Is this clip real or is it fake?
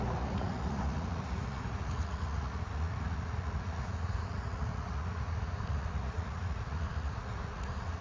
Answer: fake